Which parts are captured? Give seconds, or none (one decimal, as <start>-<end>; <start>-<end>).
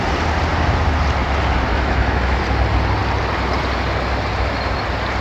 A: 0.0-1.7; 2.4-5.2